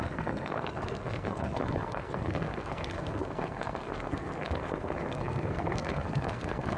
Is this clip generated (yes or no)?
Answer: yes